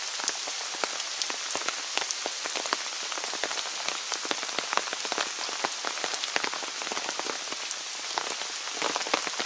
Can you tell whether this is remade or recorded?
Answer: recorded